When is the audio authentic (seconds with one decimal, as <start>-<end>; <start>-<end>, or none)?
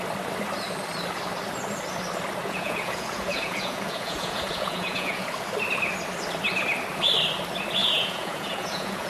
0.0-2.4; 5.3-7.8